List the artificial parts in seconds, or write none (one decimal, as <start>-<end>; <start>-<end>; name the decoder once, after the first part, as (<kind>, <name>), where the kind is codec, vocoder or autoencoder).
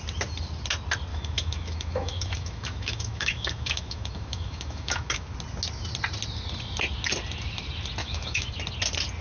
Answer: 1.1-5.3 (autoencoder, DAC-VAE); 8.0-8.5